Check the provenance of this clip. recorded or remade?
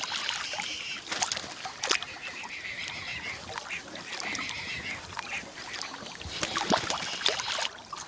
recorded